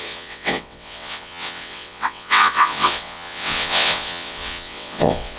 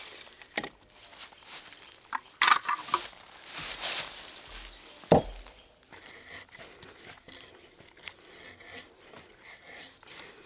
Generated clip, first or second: first